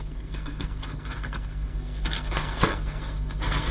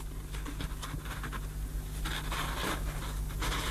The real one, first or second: second